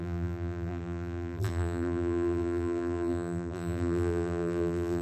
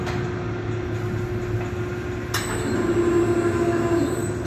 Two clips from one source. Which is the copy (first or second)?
first